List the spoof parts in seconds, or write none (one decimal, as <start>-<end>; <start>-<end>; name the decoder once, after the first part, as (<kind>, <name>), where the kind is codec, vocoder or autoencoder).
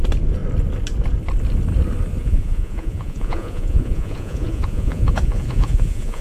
2.2-6.2 (vocoder, Vocos)